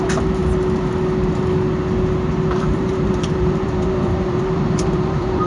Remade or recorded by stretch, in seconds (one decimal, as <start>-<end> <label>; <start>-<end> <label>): 0.0-0.4 remade; 0.4-2.3 recorded; 2.3-5.5 remade